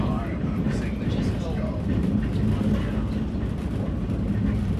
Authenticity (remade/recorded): recorded